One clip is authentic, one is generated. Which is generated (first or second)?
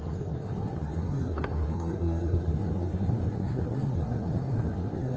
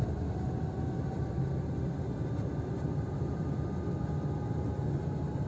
first